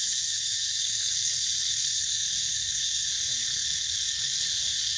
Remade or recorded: remade